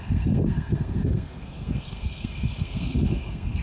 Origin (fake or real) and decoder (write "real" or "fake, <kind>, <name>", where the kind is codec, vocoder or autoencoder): fake, codec, SNAC